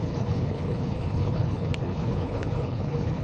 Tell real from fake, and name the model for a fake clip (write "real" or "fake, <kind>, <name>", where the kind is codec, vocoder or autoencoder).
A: fake, codec, HILCodec